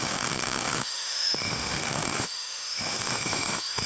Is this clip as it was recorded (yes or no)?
no